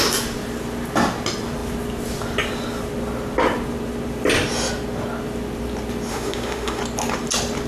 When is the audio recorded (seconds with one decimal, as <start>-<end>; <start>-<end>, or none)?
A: 0.0-6.1; 6.8-7.7